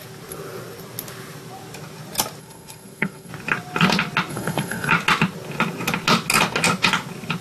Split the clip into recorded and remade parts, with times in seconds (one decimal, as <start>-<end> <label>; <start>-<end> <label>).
0.0-2.4 recorded; 2.4-3.3 remade; 3.3-4.3 recorded; 4.3-4.9 remade; 4.9-7.4 recorded